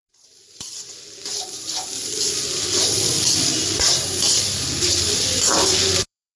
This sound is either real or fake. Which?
fake